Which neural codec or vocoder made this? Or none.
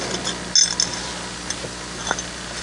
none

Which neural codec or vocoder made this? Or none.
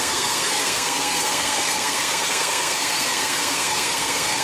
codec, SNAC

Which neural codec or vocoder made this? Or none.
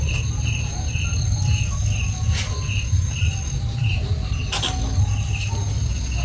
none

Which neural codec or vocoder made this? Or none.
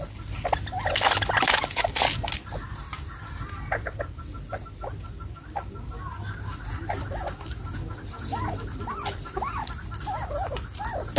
none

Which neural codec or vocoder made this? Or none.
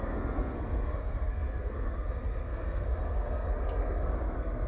codec, SNAC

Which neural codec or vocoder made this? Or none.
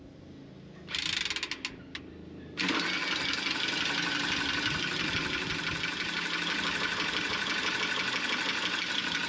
none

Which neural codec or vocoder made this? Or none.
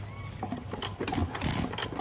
none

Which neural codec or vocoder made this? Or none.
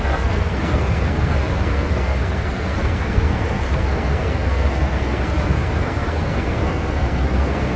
codec, SNAC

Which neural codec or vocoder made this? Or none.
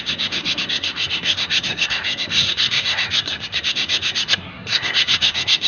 codec, SNAC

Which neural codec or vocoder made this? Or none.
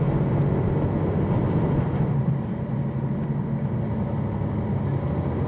none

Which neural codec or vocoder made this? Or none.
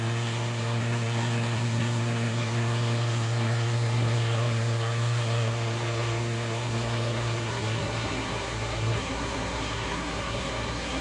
codec, SNAC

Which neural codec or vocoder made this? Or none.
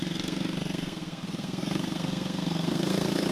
codec, SNAC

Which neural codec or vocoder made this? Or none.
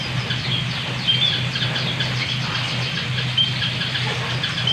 none